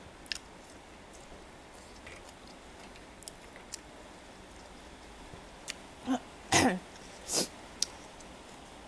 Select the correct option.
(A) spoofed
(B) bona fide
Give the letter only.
B